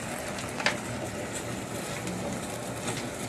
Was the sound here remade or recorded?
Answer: recorded